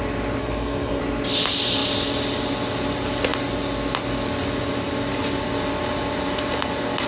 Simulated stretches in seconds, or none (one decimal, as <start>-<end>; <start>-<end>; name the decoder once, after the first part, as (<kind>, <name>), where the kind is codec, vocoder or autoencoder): 0.4-1.0 (codec, SNAC)